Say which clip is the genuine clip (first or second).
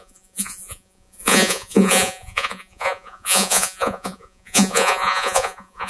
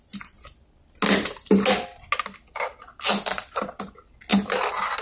second